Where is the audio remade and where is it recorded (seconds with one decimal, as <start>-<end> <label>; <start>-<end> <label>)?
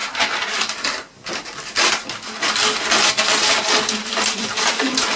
0.0-4.0 recorded; 4.0-5.2 remade